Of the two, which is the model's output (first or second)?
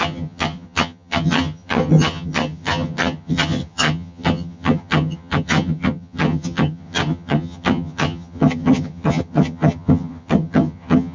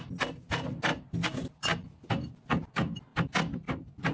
first